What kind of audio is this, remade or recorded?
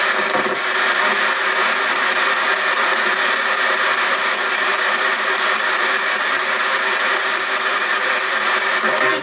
remade